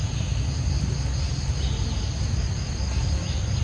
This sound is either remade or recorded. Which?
recorded